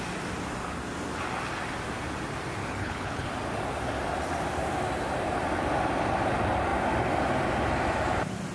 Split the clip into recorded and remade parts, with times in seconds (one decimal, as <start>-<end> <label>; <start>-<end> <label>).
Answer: 0.0-2.6 recorded; 2.6-3.3 remade; 3.3-8.5 recorded